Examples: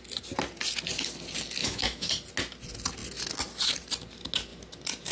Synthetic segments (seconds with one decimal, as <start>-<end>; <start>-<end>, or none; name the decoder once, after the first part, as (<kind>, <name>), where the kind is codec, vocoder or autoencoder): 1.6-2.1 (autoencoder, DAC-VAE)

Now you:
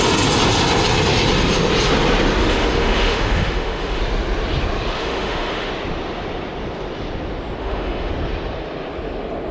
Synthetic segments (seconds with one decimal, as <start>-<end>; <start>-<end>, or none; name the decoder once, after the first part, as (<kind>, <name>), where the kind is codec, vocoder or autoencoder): 2.4-4.0 (autoencoder, DAC-VAE); 4.9-5.7; 7.6-8.1

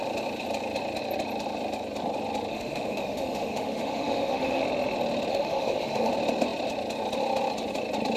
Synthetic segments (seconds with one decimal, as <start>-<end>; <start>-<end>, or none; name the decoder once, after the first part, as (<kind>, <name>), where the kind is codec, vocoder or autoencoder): 2.5-4.6 (autoencoder, DAC-VAE); 5.3-6.1

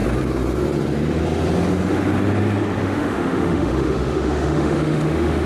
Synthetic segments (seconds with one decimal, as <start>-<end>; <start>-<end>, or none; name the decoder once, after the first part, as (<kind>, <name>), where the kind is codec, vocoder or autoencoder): 2.8-5.5 (autoencoder, DAC-VAE)

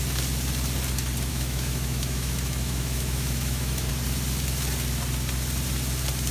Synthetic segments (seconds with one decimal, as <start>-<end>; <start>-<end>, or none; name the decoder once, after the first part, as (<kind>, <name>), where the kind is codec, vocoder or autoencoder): 1.3-3.9 (autoencoder, DAC-VAE)

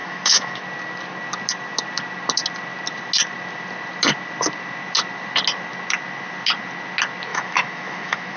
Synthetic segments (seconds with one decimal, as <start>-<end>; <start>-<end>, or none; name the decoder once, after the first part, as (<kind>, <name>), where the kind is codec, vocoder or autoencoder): 0.0-0.6 (autoencoder, DAC-VAE); 7.3-8.4

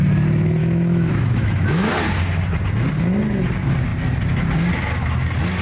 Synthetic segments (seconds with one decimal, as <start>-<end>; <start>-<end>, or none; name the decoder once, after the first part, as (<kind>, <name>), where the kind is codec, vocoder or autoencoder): 0.6-1.9 (autoencoder, DAC-VAE)

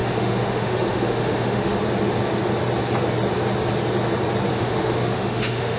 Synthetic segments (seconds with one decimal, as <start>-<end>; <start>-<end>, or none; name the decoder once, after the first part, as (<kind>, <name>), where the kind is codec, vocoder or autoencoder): 0.0-1.8 (autoencoder, DAC-VAE); 4.5-5.8